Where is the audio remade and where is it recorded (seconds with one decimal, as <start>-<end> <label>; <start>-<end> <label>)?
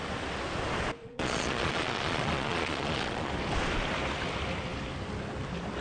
0.0-1.0 recorded; 1.0-3.3 remade; 3.3-5.8 recorded